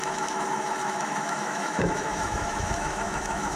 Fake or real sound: fake